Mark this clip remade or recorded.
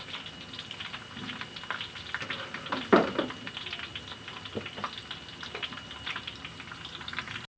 recorded